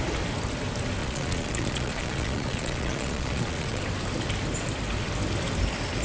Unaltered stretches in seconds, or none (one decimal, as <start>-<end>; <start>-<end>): 0.0-1.0; 3.8-6.0